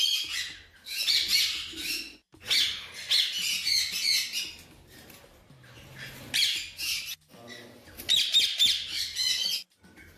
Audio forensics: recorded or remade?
recorded